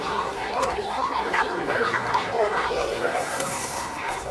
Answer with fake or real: fake